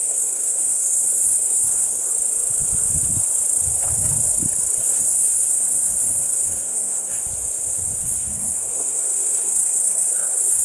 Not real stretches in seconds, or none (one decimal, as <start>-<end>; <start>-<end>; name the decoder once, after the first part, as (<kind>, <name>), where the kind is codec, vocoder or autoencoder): 0.0-2.1 (codec, SNAC); 4.8-7.2; 8.0-10.6